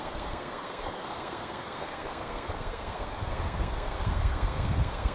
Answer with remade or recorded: remade